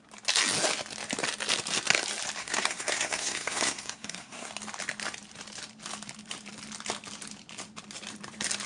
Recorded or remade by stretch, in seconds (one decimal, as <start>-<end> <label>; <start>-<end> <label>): 0.0-2.4 recorded; 2.4-4.5 remade; 4.5-8.7 recorded